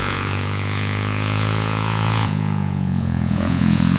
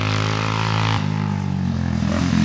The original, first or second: second